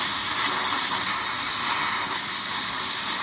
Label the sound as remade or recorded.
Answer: remade